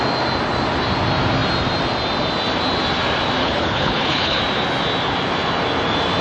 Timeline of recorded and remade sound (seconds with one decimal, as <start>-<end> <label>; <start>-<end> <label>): 0.0-3.4 recorded; 3.4-4.4 remade; 4.4-6.2 recorded